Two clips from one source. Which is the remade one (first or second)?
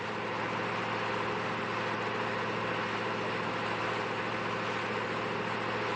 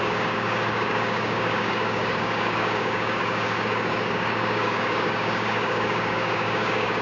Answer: second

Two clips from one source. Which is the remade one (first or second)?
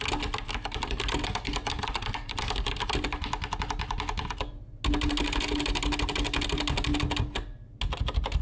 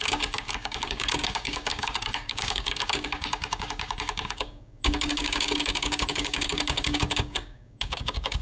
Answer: second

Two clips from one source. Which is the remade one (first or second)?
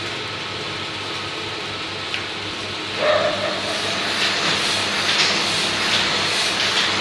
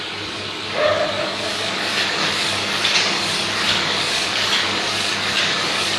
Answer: second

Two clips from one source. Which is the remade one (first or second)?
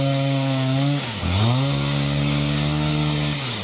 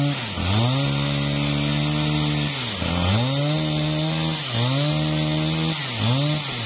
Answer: first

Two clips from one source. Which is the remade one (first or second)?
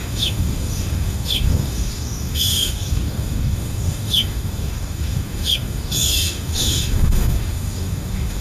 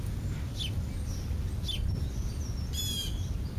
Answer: first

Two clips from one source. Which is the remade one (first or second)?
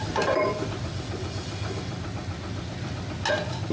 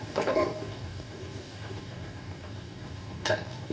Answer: second